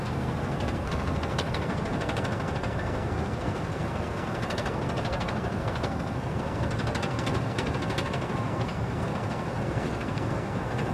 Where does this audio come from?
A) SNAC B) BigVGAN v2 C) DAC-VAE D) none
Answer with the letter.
A